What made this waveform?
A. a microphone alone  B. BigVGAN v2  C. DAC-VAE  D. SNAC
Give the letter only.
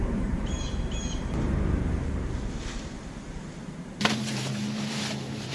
B